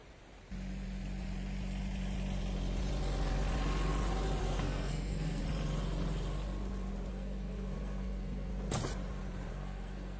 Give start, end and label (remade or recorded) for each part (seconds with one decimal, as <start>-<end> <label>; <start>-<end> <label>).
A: 0.0-4.4 recorded; 4.4-5.4 remade; 5.4-7.1 recorded; 7.1-8.5 remade; 8.5-9.5 recorded; 9.5-10.2 remade